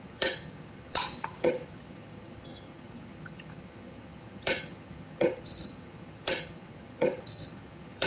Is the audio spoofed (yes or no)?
yes